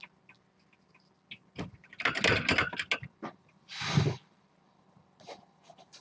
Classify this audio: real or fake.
real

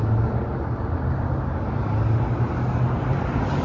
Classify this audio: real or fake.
real